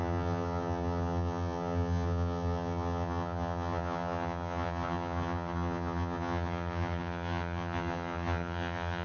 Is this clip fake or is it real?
fake